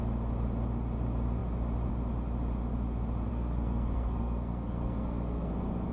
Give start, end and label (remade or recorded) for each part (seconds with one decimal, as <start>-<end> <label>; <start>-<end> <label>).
0.0-3.3 recorded; 3.3-5.5 remade; 5.5-5.9 recorded